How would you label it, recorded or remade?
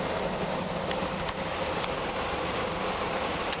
recorded